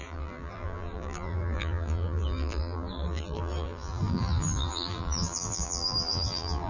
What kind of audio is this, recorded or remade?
remade